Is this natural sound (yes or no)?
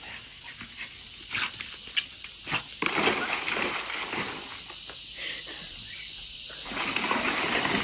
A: yes